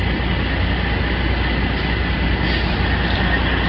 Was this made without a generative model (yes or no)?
yes